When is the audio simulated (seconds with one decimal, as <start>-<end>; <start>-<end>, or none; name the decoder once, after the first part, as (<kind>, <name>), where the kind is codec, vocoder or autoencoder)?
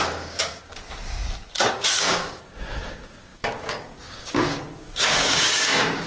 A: 0.0-1.2 (codec, DAC); 1.7-6.1